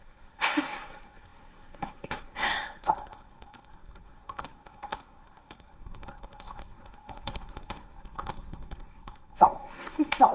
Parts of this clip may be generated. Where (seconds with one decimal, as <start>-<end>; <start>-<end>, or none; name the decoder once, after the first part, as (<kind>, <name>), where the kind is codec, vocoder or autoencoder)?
0.0-10.3 (codec, SNAC)